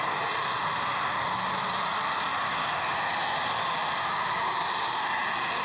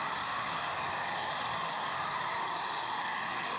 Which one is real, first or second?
first